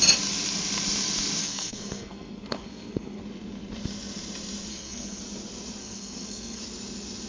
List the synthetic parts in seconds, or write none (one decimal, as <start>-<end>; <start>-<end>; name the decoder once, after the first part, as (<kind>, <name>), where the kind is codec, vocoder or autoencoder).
1.4-3.2 (codec, SNAC); 4.7-5.2; 5.8-6.6